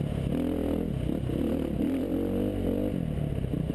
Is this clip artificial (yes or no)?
no